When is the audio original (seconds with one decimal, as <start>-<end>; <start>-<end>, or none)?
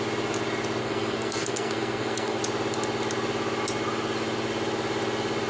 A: 0.0-0.8; 2.4-5.5